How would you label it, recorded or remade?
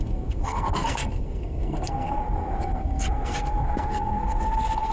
remade